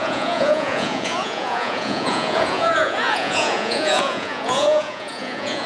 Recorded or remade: remade